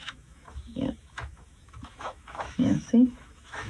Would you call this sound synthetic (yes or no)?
yes